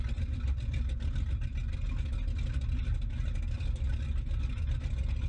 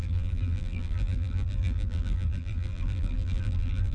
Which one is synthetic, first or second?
second